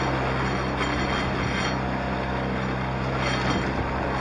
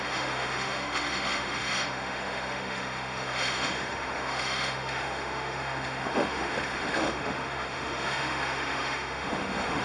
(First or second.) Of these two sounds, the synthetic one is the second